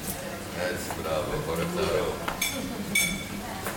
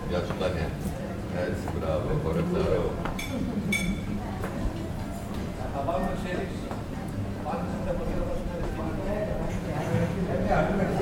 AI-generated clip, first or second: second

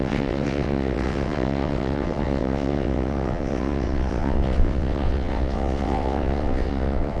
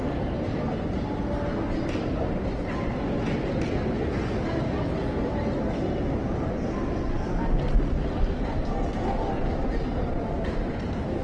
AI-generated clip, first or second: first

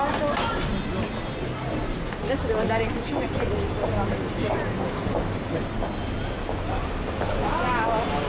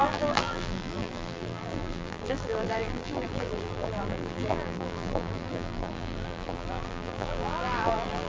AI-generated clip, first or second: second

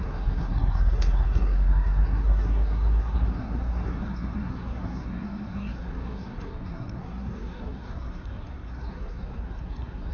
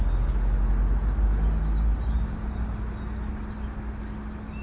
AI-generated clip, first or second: first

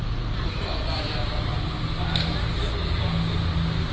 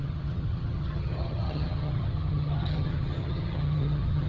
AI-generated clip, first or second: second